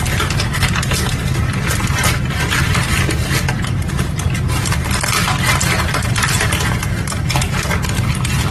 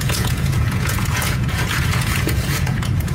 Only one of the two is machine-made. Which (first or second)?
second